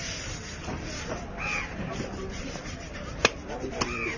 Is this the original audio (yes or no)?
no